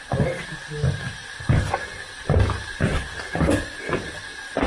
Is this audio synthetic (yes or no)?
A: no